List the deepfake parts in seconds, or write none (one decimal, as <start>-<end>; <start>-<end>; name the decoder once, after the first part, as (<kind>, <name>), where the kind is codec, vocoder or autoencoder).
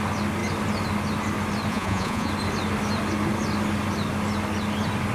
1.7-2.3 (vocoder, Vocos)